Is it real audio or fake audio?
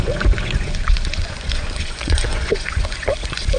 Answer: fake